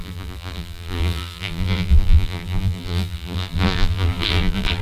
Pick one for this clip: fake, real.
fake